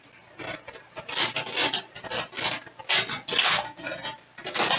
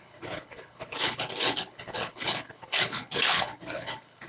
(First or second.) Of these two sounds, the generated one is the second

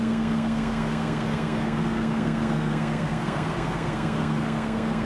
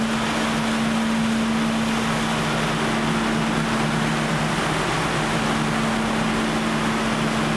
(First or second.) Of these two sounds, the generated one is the first